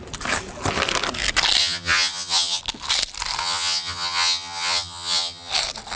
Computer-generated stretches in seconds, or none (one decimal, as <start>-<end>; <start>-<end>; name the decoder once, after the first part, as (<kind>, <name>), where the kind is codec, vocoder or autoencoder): 1.6-2.6 (vocoder, HiFi-GAN); 3.4-5.5